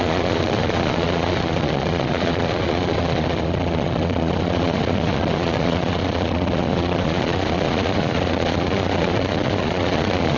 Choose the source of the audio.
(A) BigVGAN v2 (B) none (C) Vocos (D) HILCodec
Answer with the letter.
C